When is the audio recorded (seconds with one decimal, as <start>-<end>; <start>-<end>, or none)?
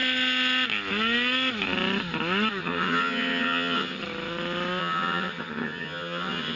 0.0-2.6; 4.0-4.8